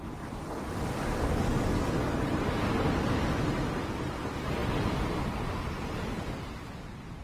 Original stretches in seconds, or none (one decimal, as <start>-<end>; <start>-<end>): 0.0-7.2